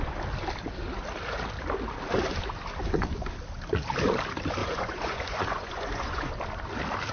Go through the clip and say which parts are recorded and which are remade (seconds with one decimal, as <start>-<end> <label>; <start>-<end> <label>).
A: 0.0-4.6 recorded; 4.6-6.3 remade; 6.3-7.1 recorded